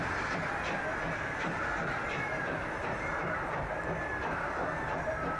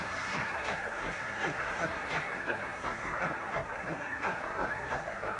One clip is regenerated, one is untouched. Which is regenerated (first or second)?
second